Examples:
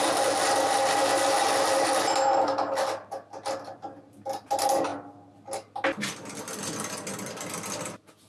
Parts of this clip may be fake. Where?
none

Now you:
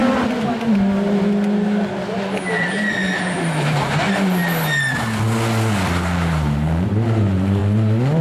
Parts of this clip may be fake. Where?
3.2-4.4 (vocoder, BigVGAN v2); 6.0-7.6

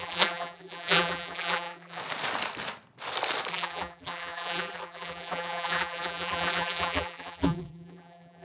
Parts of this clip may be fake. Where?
0.0-2.0 (vocoder, BigVGAN v2); 3.5-8.4

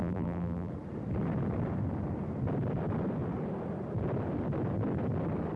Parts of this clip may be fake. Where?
0.0-0.7 (vocoder, BigVGAN v2)

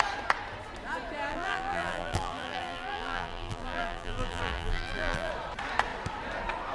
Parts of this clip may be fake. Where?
1.3-5.3 (vocoder, BigVGAN v2)

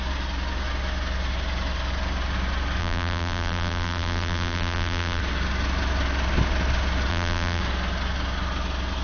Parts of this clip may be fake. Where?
2.8-5.2 (vocoder, BigVGAN v2); 7.1-7.6

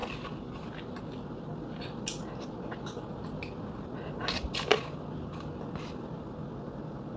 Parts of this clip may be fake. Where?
none

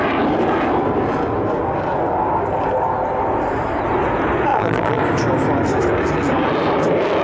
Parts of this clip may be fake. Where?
4.5-5.0 (vocoder, BigVGAN v2)